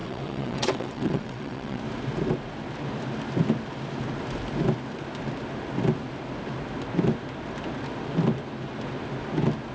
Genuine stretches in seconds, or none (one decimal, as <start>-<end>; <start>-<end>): 1.8-9.7